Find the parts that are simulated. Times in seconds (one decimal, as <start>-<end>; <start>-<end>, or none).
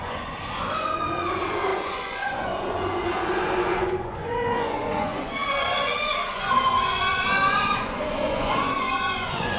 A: 0.0-9.6